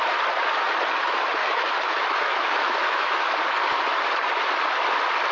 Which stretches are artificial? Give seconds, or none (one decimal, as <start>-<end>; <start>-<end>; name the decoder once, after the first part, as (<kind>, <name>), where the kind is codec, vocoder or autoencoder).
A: 1.4-3.3 (autoencoder, DAC-VAE)